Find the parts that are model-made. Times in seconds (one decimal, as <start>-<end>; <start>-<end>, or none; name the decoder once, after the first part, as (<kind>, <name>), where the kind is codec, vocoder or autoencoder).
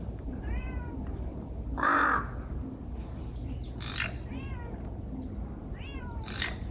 0.0-2.0 (vocoder, BigVGAN v2); 6.0-6.7